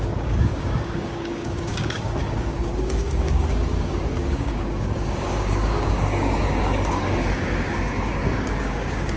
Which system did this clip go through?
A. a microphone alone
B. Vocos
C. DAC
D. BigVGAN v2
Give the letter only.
C